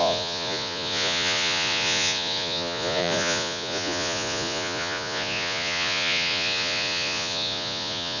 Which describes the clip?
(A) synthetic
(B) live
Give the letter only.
A